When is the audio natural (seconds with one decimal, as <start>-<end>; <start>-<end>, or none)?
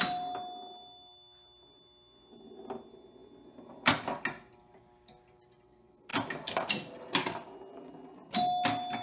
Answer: 0.0-9.0